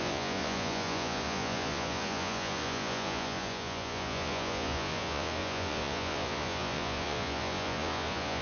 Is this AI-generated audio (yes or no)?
yes